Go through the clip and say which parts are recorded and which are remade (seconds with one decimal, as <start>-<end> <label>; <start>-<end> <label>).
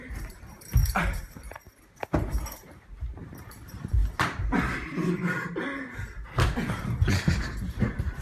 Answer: 0.0-4.0 remade; 4.0-7.7 recorded; 7.7-8.2 remade